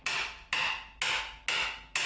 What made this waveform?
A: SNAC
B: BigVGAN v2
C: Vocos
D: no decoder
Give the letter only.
D